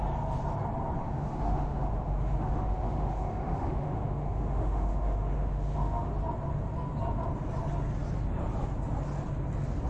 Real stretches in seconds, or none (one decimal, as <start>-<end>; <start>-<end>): 0.0-1.0; 6.1-9.9